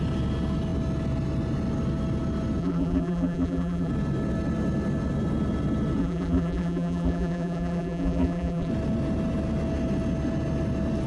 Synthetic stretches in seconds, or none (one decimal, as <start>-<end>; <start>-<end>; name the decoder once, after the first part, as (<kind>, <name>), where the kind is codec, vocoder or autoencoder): 2.6-3.9 (vocoder, BigVGAN v2); 6.0-8.7